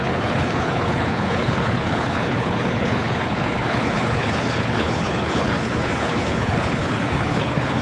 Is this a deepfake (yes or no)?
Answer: yes